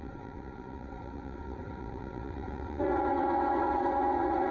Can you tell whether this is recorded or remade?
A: remade